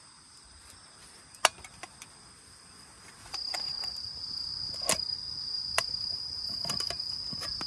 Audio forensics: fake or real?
real